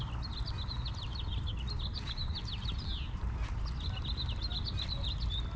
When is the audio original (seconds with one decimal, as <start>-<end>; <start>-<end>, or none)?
0.0-1.9; 3.6-5.6